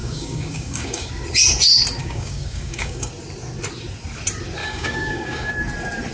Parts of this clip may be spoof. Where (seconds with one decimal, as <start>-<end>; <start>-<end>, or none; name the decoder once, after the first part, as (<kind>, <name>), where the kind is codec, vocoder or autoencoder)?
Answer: 0.0-1.1 (codec, DAC); 2.0-3.1; 4.6-5.5